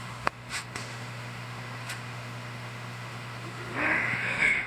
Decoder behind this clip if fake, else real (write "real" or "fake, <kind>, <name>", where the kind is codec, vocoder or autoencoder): fake, autoencoder, DAC-VAE